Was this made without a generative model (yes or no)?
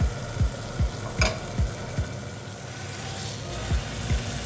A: yes